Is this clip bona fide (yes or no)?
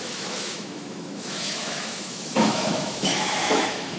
no